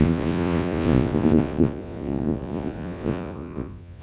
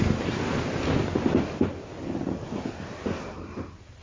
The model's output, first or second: first